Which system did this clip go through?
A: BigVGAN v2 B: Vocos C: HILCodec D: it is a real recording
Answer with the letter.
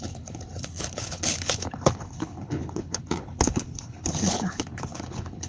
C